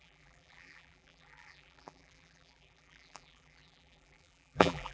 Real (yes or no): no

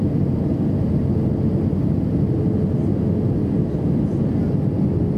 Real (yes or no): yes